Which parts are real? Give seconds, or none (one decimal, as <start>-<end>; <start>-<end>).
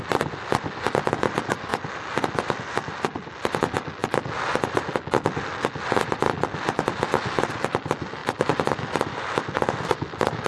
0.0-10.5